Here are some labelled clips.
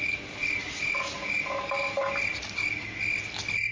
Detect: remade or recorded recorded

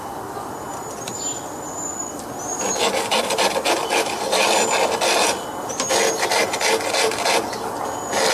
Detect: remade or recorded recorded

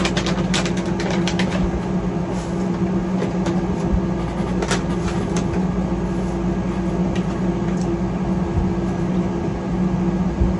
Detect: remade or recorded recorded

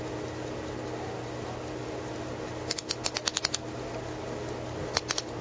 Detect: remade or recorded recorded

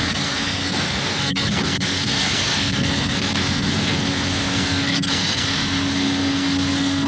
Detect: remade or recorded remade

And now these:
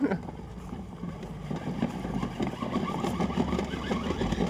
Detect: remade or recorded recorded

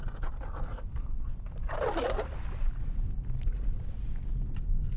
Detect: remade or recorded recorded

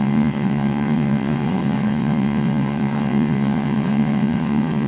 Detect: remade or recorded remade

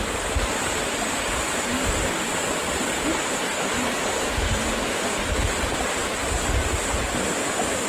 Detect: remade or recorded recorded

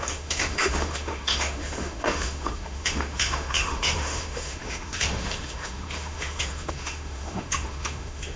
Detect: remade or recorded remade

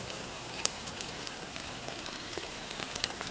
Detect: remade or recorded remade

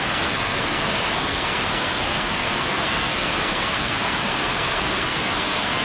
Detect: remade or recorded remade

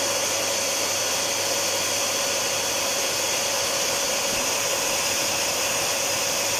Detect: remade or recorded recorded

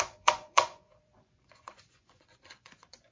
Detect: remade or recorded remade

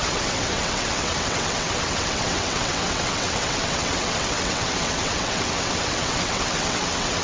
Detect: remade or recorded remade